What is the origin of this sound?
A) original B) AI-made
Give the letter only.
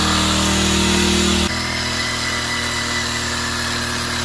A